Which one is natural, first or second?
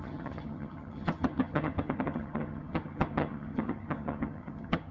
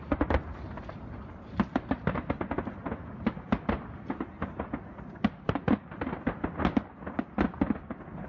second